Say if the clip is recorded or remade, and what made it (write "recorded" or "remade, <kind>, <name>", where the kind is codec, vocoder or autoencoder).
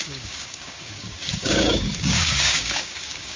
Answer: remade, codec, DAC